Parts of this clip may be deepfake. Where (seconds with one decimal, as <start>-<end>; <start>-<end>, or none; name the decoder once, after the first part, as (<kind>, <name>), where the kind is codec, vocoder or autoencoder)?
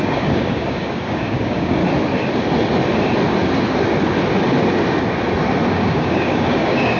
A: 0.0-1.8 (codec, DAC); 5.7-7.0